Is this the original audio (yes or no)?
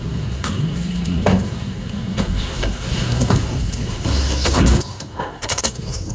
no